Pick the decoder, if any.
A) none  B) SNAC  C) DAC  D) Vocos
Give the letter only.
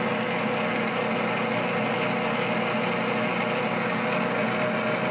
A